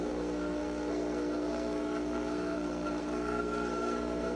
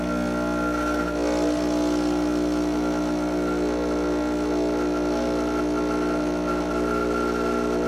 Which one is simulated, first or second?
first